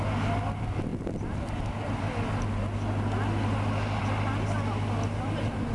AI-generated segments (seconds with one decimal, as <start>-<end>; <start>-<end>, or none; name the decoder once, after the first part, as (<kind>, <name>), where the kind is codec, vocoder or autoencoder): none